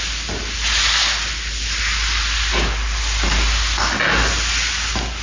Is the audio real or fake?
real